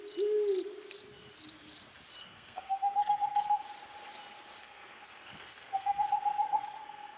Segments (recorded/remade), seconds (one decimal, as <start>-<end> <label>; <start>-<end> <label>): 0.0-2.2 recorded; 2.2-3.6 remade; 3.6-4.6 recorded; 4.6-7.2 remade